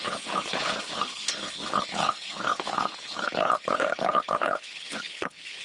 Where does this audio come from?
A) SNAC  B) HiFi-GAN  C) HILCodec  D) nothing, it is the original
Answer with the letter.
C